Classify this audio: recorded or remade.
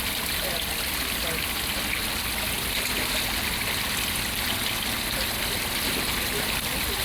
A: recorded